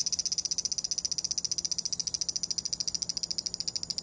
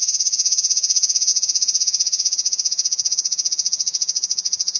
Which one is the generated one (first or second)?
second